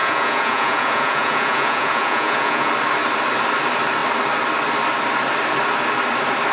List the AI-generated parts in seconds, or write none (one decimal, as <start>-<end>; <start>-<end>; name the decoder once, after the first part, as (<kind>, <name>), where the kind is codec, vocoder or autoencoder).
0.0-2.7 (vocoder, Vocos)